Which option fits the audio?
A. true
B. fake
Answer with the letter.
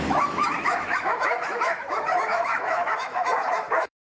B